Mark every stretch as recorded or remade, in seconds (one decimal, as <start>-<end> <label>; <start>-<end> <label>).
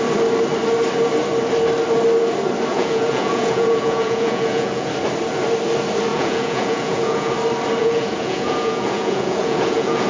0.0-2.7 recorded; 2.7-4.9 remade; 4.9-6.1 recorded; 6.1-7.3 remade; 7.3-7.8 recorded; 7.8-10.1 remade